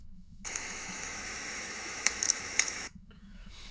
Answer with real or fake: fake